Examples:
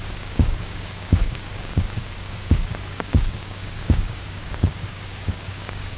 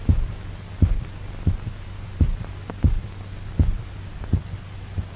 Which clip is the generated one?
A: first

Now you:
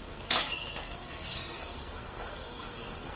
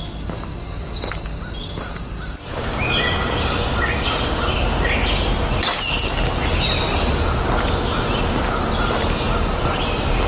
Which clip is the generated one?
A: first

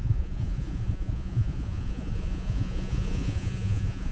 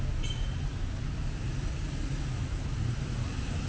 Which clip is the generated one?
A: first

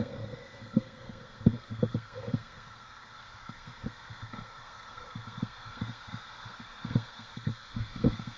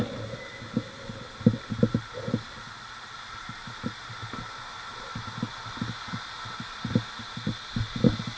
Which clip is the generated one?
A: first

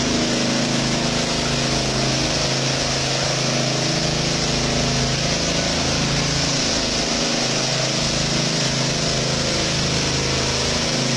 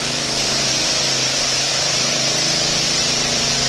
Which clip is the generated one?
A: second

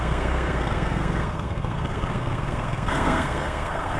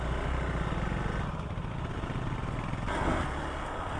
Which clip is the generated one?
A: first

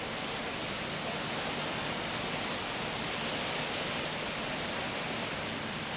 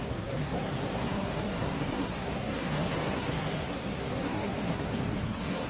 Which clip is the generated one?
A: second